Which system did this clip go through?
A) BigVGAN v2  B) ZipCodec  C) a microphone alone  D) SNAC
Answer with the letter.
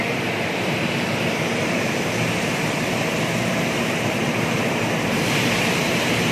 A